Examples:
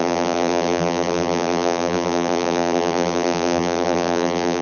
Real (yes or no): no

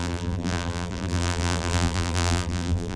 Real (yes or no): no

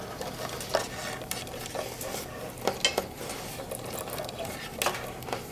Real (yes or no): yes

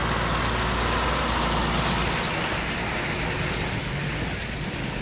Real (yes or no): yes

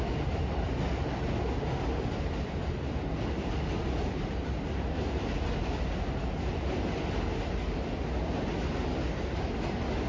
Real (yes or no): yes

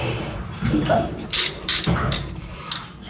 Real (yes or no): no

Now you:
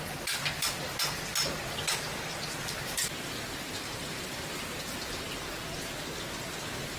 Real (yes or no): yes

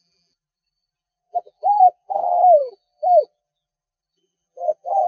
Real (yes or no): no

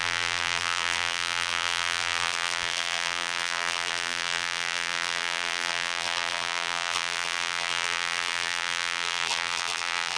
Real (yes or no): no